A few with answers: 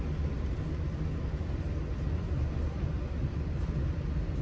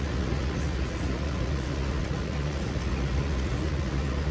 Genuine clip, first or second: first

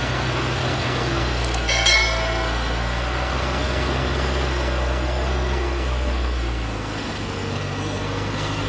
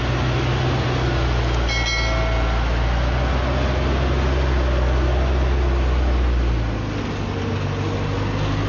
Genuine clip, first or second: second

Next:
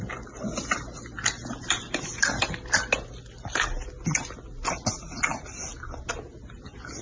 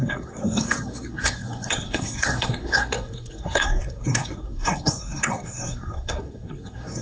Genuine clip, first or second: first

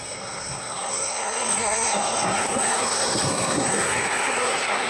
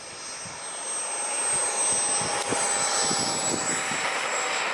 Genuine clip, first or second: second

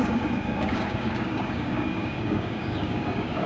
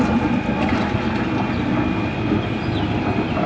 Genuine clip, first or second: second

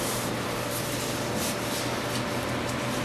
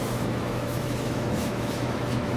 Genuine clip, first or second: first